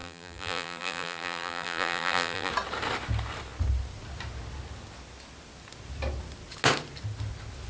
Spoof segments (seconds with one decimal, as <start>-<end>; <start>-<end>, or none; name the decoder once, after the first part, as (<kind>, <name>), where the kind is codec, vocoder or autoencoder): 0.0-2.5 (vocoder, BigVGAN v2)